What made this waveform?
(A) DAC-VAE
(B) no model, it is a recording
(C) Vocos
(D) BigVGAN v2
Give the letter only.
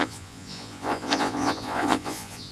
C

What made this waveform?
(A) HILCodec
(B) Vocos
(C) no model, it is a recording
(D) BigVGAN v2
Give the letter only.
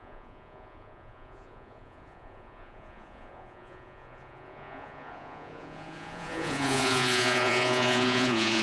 B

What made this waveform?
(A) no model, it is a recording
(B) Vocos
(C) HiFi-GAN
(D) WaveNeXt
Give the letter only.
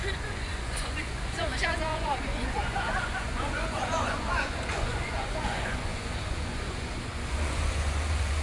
B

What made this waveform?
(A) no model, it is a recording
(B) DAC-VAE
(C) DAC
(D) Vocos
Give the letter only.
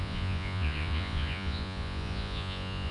D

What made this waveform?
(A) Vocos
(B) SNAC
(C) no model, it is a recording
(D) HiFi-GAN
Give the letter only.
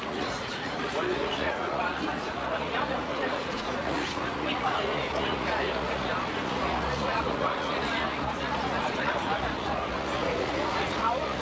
A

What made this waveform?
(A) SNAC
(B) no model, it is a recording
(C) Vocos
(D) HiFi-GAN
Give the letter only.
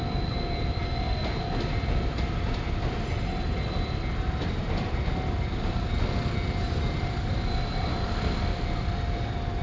B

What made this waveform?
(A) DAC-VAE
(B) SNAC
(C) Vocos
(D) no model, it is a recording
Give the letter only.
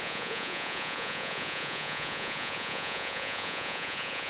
C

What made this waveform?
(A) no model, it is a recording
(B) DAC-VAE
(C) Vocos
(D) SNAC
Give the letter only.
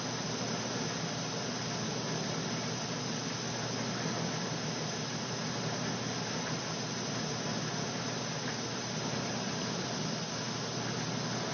A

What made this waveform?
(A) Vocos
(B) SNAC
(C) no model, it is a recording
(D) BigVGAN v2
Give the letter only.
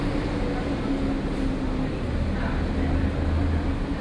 C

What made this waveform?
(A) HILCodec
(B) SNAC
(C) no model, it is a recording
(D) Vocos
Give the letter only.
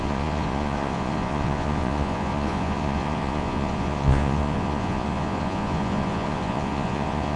D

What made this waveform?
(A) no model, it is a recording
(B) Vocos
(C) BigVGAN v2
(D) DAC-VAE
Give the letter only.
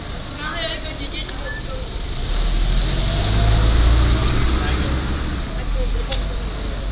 A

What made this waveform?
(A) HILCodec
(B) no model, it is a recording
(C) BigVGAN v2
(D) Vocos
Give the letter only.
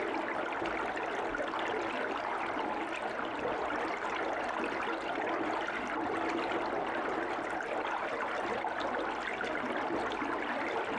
B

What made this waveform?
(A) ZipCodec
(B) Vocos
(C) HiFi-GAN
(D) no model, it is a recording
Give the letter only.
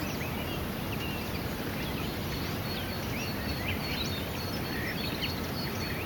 D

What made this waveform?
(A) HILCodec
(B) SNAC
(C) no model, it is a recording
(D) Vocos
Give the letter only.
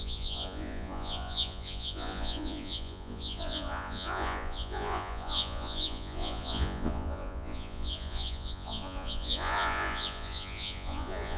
D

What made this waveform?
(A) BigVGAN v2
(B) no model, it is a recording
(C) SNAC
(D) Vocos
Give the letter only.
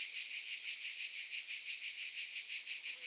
B